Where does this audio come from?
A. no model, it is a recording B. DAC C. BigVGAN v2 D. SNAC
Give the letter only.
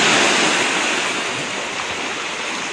A